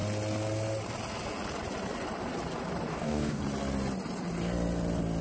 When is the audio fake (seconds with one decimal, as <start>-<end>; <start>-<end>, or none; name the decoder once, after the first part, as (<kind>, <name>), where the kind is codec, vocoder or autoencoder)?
2.9-3.4 (codec, DAC)